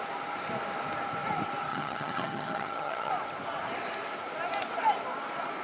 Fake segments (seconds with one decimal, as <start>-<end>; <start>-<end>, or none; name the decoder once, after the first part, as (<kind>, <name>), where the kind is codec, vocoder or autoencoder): 1.7-3.1 (vocoder, HiFi-GAN)